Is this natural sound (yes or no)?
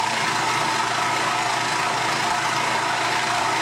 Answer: yes